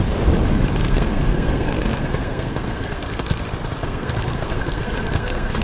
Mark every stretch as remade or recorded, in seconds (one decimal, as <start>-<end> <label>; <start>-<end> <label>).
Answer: 0.0-0.8 recorded; 0.8-3.4 remade; 3.4-3.8 recorded; 3.8-5.6 remade